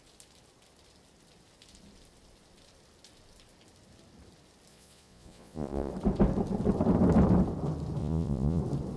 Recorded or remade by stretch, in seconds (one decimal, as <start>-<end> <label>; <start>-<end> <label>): 0.0-4.7 recorded; 4.7-5.9 remade; 5.9-8.0 recorded; 8.0-8.6 remade; 8.6-9.0 recorded